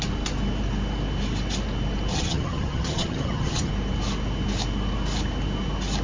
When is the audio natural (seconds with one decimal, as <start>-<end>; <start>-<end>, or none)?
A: 0.0-2.1; 3.7-6.0